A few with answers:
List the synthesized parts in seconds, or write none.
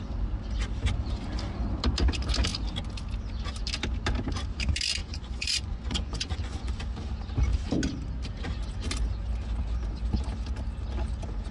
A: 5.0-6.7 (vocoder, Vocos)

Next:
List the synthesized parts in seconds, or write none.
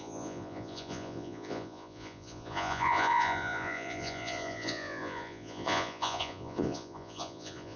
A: 0.0-7.8 (vocoder, Vocos)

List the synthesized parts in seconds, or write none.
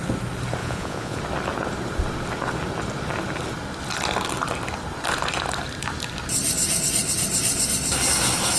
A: 0.6-1.2 (vocoder, Vocos)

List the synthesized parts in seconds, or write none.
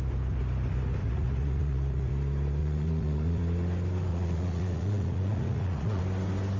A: 1.0-2.1 (vocoder, Vocos); 2.6-3.4; 4.1-6.0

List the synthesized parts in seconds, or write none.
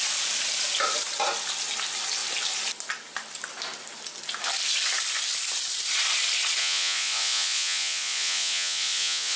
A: 6.6-9.4 (vocoder, Vocos)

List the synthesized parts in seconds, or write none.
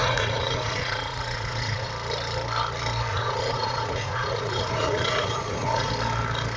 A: 0.0-1.9 (vocoder, Vocos); 3.1-5.9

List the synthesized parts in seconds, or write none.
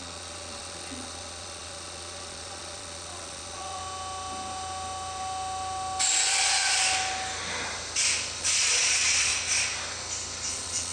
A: 0.0-3.8 (vocoder, Vocos); 8.4-9.3; 10.5-10.9